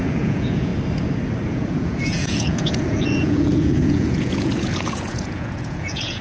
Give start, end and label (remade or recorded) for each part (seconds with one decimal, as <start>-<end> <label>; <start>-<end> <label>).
0.0-0.7 remade; 0.7-1.5 recorded; 1.5-6.2 remade

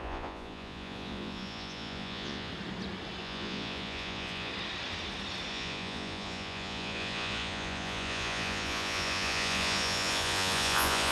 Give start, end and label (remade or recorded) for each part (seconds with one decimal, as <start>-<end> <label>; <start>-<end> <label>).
0.0-2.5 remade; 2.5-3.2 recorded; 3.2-4.5 remade; 4.5-5.5 recorded; 5.5-11.1 remade

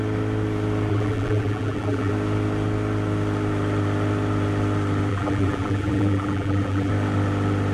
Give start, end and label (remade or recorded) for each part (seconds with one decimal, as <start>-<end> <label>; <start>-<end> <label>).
0.0-0.9 recorded; 0.9-2.1 remade; 2.1-5.1 recorded; 5.1-6.9 remade; 6.9-7.7 recorded

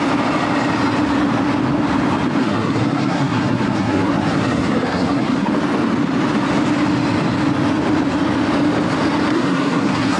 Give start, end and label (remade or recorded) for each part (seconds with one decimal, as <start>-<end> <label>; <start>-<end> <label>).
0.0-2.4 recorded; 2.4-5.5 remade; 5.5-9.3 recorded; 9.3-10.2 remade

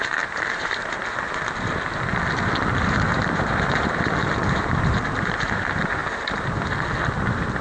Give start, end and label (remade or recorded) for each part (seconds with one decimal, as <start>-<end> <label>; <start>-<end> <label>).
0.0-1.0 remade; 1.0-2.9 recorded; 2.9-6.0 remade; 6.0-7.6 recorded